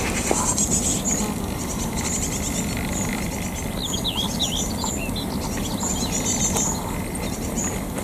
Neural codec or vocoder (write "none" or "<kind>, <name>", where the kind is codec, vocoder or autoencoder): none